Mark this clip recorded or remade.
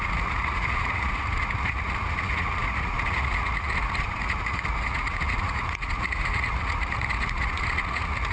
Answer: remade